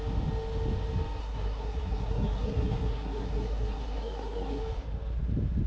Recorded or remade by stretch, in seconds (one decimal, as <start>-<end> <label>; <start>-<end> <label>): 0.0-1.2 recorded; 1.2-4.6 remade; 4.6-5.7 recorded